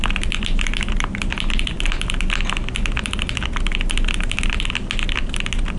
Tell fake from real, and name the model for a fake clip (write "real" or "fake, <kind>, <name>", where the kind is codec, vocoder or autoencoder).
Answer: real